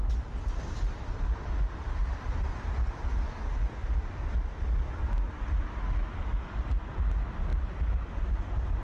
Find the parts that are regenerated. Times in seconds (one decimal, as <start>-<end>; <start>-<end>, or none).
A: 0.0-0.6; 2.0-2.7